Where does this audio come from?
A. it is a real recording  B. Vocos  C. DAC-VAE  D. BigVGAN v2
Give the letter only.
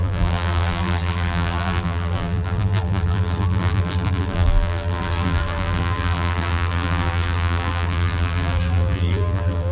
D